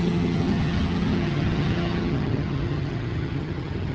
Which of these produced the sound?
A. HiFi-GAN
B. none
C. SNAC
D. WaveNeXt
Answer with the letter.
A